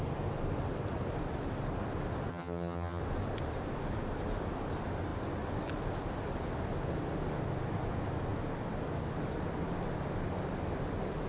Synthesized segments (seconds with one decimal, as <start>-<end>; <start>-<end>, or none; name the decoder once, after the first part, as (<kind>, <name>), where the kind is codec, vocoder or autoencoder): 2.3-3.0 (vocoder, HiFi-GAN)